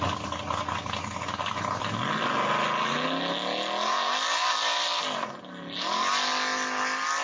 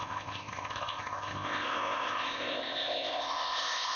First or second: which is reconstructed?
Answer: second